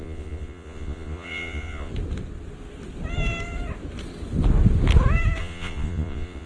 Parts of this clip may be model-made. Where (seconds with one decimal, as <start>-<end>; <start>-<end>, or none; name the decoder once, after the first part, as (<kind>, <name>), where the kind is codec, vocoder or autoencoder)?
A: 0.0-1.9 (vocoder, Vocos); 5.4-6.5